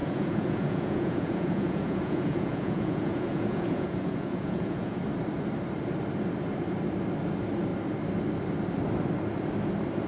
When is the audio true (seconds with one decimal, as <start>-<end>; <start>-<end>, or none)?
5.0-10.1